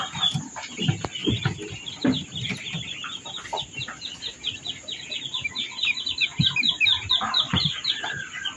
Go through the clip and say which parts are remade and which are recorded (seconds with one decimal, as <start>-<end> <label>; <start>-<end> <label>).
0.0-6.9 recorded; 6.9-7.7 remade; 7.7-8.6 recorded